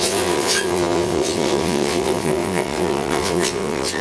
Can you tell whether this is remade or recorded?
remade